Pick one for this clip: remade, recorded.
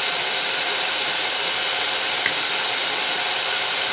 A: recorded